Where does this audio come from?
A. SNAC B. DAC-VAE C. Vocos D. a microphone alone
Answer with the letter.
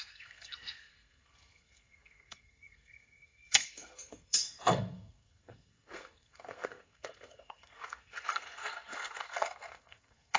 A